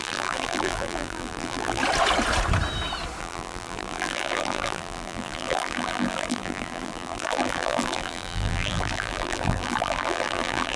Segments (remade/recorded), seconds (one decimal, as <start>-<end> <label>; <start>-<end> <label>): 0.0-1.8 remade; 1.8-3.2 recorded; 3.2-10.8 remade